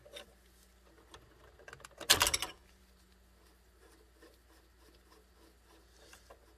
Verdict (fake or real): real